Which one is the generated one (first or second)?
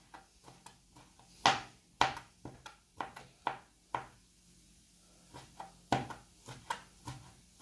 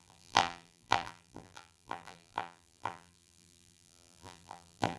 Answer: second